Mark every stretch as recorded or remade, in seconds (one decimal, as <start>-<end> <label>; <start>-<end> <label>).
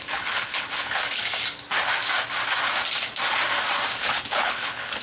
0.0-1.2 remade; 1.2-4.0 recorded; 4.0-5.0 remade